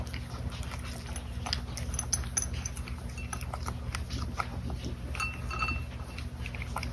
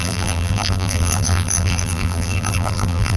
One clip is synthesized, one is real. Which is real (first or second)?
first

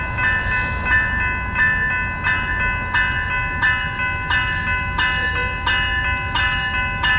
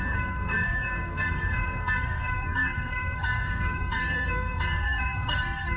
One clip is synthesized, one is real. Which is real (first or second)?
first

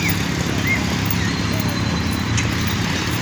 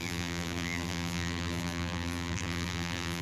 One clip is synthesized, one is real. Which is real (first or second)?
first